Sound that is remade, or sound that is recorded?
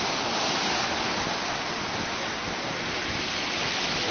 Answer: recorded